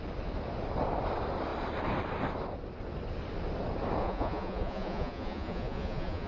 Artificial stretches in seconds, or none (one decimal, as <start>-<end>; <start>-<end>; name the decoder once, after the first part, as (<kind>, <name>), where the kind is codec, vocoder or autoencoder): 4.0-6.3 (vocoder, Vocos)